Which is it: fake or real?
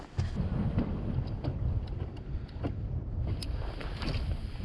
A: real